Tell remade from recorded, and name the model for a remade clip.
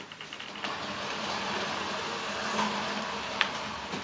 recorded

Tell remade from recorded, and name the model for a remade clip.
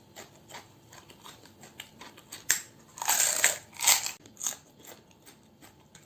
recorded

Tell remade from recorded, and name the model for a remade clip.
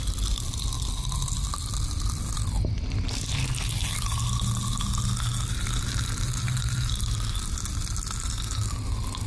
recorded